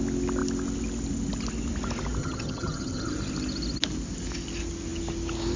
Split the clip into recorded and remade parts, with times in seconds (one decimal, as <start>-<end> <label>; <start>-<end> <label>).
0.0-2.2 recorded; 2.2-3.1 remade; 3.1-5.6 recorded